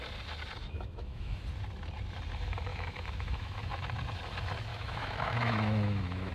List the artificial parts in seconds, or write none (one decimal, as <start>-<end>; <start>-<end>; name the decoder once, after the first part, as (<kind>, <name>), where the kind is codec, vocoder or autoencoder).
0.6-1.4 (autoencoder, DAC-VAE); 2.7-3.7; 4.7-6.3